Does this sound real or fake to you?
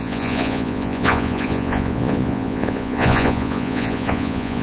fake